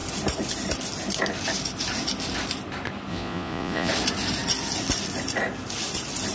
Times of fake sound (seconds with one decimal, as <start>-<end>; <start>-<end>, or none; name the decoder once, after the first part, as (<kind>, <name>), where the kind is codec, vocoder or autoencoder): 3.1-3.9 (vocoder, Vocos)